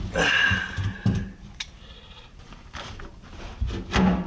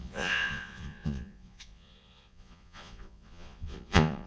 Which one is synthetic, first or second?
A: second